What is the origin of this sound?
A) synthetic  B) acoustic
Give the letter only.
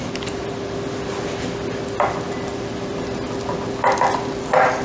B